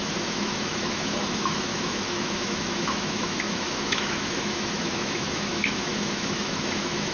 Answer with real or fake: fake